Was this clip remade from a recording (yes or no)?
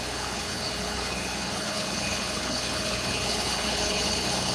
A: yes